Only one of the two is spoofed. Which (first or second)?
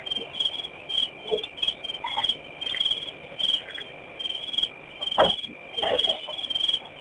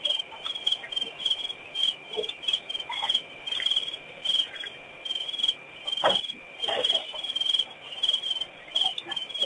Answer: second